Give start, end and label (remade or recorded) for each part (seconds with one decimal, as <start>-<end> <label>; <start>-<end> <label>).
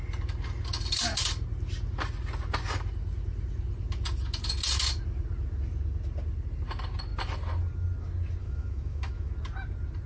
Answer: 0.0-8.4 recorded; 8.4-9.3 remade; 9.3-10.1 recorded